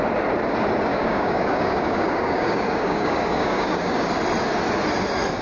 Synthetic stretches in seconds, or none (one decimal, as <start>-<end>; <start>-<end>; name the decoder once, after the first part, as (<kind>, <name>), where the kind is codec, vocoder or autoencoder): 0.9-4.1 (codec, DAC)